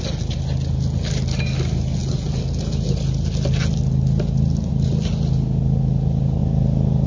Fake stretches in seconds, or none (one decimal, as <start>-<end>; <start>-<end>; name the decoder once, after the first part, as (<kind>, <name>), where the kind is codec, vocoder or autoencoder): none